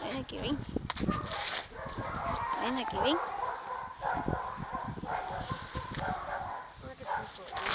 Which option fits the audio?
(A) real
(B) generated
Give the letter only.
A